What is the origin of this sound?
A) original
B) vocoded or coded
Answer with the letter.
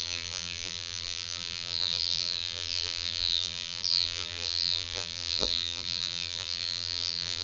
B